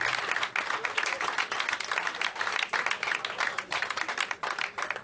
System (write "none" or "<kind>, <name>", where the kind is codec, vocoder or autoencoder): none